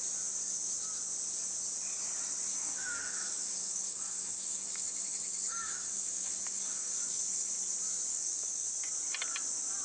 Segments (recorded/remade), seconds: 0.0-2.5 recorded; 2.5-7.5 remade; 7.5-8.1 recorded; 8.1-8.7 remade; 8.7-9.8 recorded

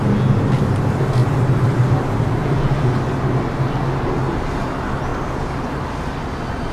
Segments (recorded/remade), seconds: 0.0-1.2 recorded; 1.2-2.4 remade; 2.4-5.1 recorded; 5.1-5.9 remade; 5.9-6.7 recorded

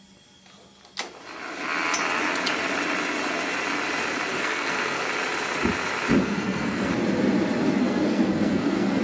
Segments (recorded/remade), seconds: 0.0-4.3 recorded; 4.3-5.0 remade; 5.0-6.2 recorded; 6.2-6.9 remade; 6.9-7.8 recorded; 7.8-9.0 remade

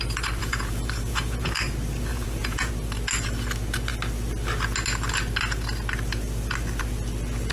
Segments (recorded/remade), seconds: 0.0-0.4 recorded; 0.4-1.5 remade; 1.5-2.1 recorded; 2.1-2.7 remade; 2.7-7.5 recorded